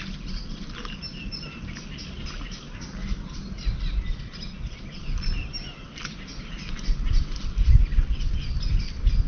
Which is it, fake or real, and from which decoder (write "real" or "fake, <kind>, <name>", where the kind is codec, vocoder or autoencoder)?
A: real